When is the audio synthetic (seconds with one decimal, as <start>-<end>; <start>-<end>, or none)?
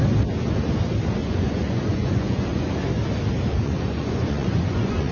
1.2-2.7; 3.5-5.1